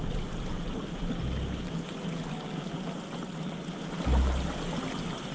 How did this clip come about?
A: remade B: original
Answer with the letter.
B